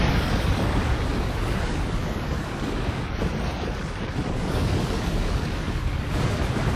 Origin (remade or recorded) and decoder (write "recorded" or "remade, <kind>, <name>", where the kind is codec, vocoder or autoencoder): remade, codec, DAC